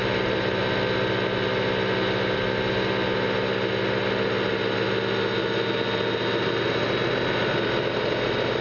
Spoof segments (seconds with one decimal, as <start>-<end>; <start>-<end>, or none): none